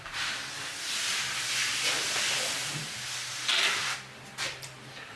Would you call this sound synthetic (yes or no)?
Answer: no